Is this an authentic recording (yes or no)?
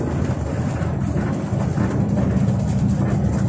yes